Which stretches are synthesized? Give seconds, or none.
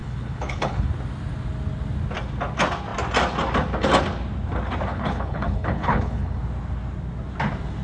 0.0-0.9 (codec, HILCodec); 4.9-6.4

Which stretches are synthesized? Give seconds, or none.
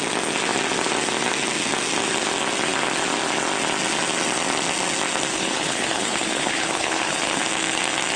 5.3-7.4 (codec, HILCodec)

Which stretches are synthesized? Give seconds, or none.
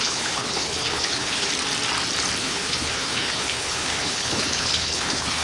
0.0-1.5 (codec, HILCodec); 2.4-5.4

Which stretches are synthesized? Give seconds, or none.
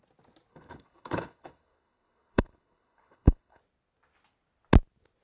0.5-3.6 (codec, HILCodec)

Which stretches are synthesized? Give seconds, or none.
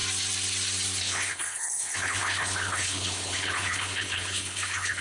1.0-5.0 (codec, HILCodec)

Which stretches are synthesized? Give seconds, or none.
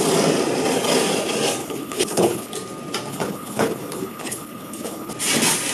1.6-2.5 (codec, HILCodec); 3.1-5.1